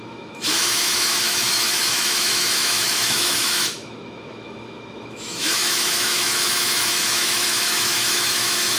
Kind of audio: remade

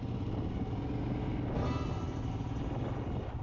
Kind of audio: recorded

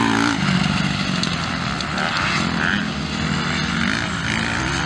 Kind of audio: recorded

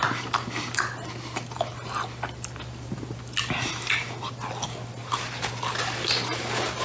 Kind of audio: recorded